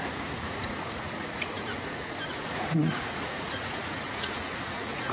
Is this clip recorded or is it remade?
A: remade